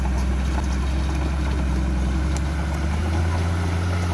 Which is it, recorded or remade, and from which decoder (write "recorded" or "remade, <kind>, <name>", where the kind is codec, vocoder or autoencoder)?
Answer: recorded